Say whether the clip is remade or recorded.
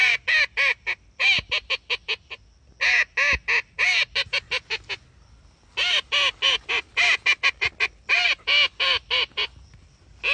recorded